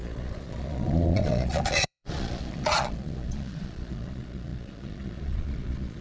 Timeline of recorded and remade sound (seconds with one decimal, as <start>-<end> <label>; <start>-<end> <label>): 0.0-6.0 remade